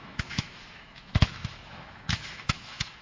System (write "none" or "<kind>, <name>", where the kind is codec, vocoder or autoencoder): autoencoder, DAC-VAE